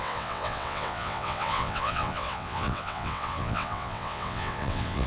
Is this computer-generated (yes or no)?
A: yes